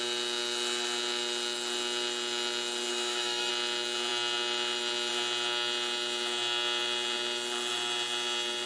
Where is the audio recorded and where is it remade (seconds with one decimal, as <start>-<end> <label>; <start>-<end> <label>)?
0.0-2.9 recorded; 2.9-3.5 remade; 3.5-8.7 recorded